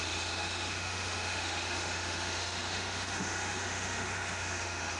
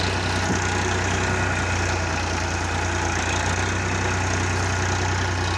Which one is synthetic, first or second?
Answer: first